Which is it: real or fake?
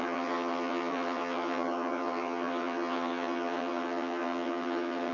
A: fake